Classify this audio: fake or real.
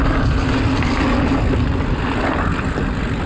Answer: real